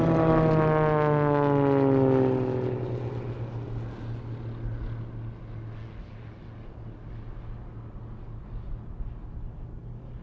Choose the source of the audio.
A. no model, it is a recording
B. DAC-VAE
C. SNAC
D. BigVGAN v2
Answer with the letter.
A